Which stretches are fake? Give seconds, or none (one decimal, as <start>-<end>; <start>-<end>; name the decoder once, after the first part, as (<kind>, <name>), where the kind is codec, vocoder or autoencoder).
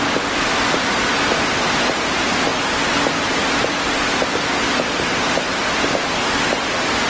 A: none